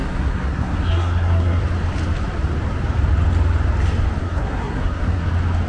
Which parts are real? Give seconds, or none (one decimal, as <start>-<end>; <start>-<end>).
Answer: 1.6-4.2; 5.3-5.7